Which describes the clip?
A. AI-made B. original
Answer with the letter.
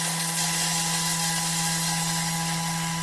B